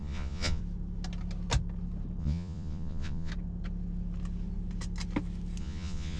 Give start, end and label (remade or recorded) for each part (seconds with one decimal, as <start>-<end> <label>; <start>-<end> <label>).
0.0-0.6 remade; 0.6-2.2 recorded; 2.2-3.3 remade; 3.3-5.6 recorded; 5.6-6.2 remade